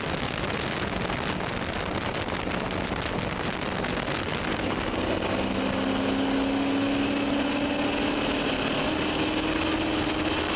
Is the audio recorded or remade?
recorded